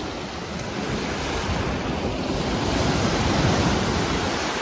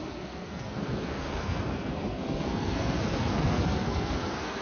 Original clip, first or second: first